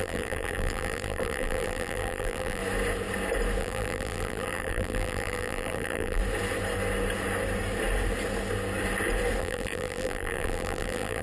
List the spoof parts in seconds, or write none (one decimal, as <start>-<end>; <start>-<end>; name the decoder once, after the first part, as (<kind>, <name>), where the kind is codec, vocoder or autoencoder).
0.0-2.6 (vocoder, BigVGAN v2); 3.6-6.2; 9.4-11.2